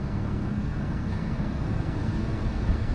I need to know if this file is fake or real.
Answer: fake